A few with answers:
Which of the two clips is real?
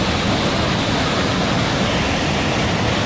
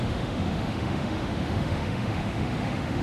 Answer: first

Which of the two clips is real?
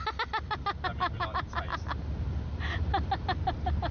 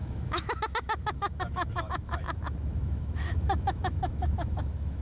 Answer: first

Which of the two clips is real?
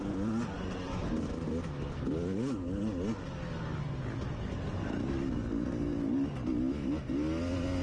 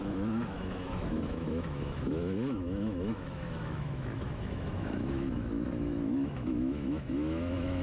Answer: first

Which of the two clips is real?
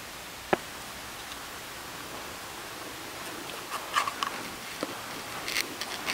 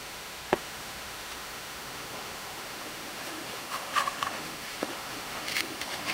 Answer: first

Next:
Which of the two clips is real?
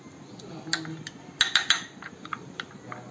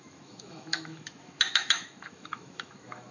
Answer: first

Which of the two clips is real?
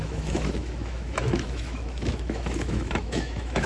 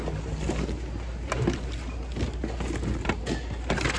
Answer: second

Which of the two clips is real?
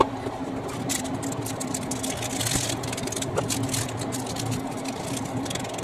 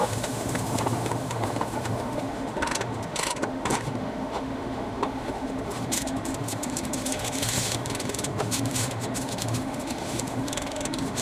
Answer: first